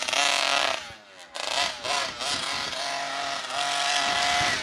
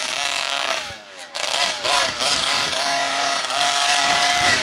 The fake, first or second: second